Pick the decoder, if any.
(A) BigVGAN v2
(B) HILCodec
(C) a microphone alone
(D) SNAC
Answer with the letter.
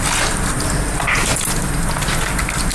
C